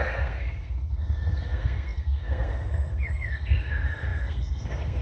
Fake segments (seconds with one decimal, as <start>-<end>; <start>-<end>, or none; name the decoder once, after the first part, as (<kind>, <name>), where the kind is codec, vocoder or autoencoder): 0.0-5.0 (codec, SNAC)